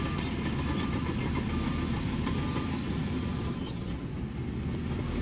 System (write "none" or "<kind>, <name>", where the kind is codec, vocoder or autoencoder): vocoder, BigVGAN v2